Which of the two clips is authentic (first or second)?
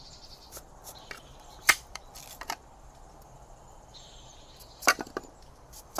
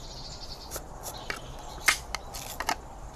second